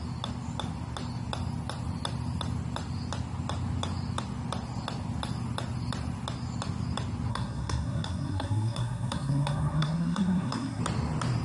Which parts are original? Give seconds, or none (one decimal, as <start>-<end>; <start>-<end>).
0.0-7.3; 10.8-11.4